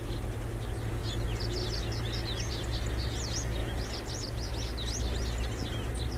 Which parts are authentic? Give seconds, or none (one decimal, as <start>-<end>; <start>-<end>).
0.0-6.2

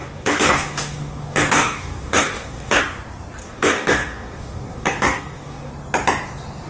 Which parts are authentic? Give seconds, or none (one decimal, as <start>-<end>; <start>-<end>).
2.8-3.4; 5.7-6.7

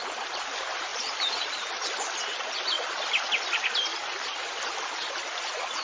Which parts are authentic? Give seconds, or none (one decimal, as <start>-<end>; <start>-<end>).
0.0-5.8

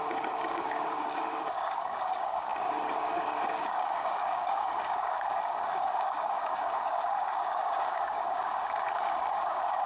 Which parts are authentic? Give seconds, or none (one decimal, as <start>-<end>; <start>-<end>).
none

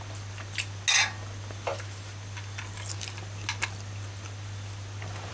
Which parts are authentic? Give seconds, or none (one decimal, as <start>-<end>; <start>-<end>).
0.0-5.3

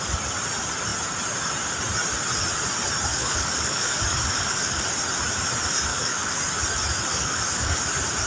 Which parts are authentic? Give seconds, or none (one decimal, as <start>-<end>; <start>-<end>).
0.0-3.1; 4.9-5.9; 6.4-7.1; 7.9-8.3